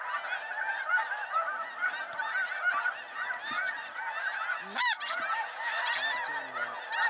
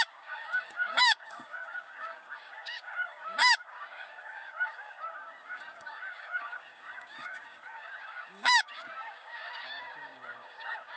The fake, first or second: second